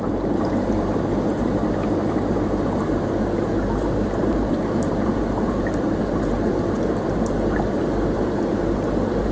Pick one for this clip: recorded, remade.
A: remade